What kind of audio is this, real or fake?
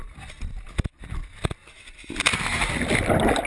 real